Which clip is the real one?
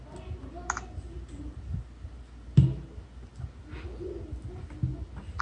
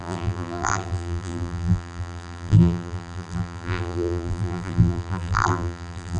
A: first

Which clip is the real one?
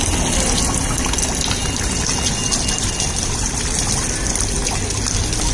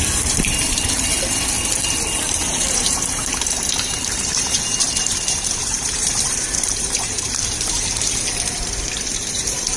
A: first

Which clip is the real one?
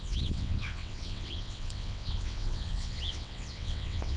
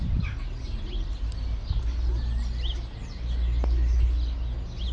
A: second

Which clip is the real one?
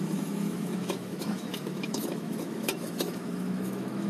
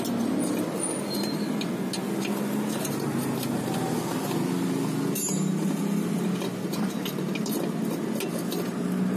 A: second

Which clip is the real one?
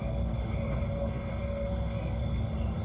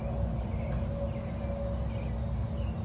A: second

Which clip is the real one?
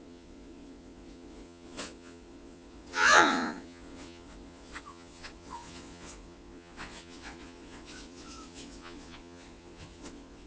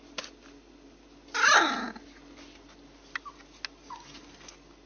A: second